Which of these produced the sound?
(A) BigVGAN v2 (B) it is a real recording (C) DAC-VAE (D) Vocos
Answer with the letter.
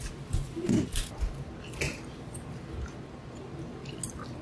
B